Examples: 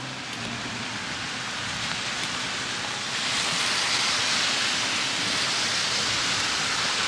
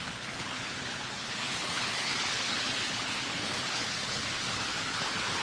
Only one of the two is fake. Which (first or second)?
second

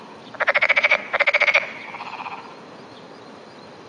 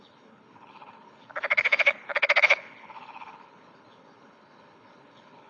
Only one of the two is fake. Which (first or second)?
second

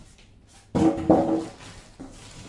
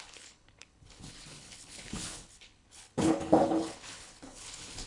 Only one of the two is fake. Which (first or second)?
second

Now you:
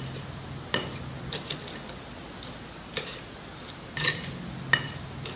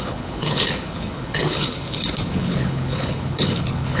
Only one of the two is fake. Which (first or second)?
second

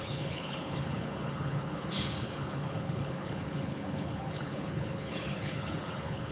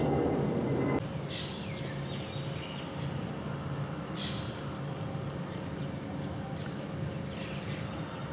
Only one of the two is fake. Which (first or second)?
first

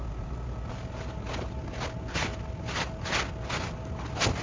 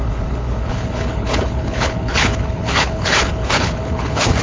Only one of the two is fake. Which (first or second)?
second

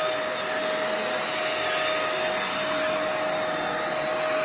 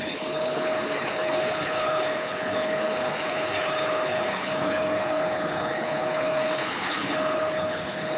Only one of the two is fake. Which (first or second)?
second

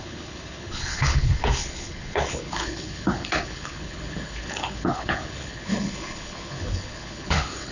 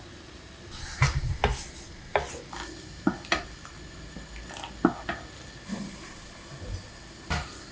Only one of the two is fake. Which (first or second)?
first